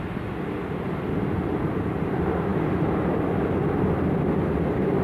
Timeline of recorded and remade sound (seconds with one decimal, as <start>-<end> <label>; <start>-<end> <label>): 0.0-5.0 recorded